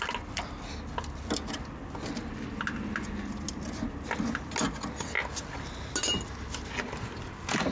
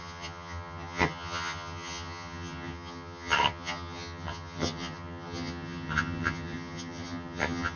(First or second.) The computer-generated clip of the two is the second